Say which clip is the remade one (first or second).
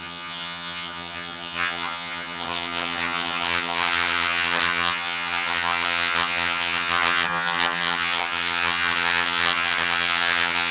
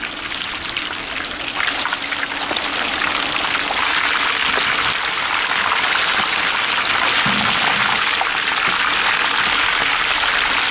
first